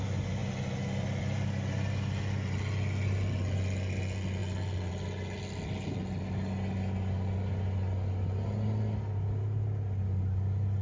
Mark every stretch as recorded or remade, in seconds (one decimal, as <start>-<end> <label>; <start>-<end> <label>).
0.0-10.8 recorded